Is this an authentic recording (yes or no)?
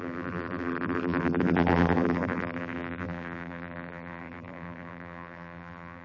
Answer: no